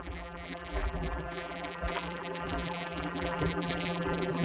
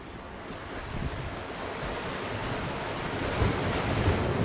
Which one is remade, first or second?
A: first